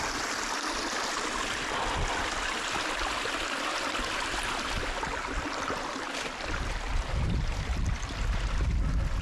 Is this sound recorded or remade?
recorded